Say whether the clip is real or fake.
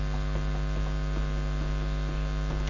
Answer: real